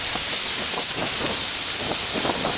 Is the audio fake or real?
fake